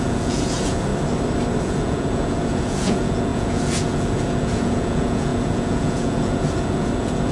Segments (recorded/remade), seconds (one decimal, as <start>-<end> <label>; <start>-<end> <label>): 0.0-0.9 remade; 0.9-1.6 recorded; 1.6-7.3 remade